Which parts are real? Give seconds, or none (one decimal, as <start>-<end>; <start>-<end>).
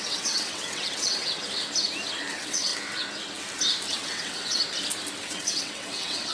1.4-2.3; 2.7-3.9; 4.6-5.2